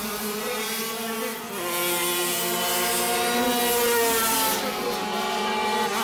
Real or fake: real